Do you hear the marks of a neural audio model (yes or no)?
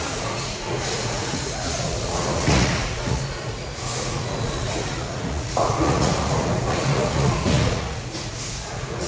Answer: yes